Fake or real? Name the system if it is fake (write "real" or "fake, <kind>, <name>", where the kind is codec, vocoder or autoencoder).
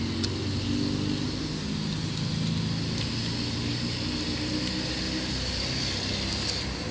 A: real